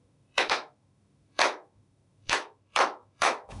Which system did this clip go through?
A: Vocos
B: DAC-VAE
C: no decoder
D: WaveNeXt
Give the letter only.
B